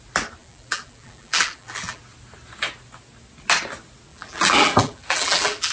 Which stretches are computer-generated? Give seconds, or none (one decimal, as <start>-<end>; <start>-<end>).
0.4-2.0; 4.1-5.7